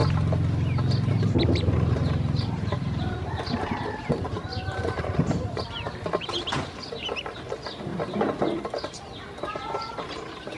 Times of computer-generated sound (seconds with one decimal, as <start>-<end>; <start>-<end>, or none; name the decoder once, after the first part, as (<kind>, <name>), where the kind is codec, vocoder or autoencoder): 1.1-7.9 (vocoder, BigVGAN v2); 8.6-10.6